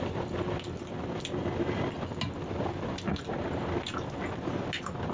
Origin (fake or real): real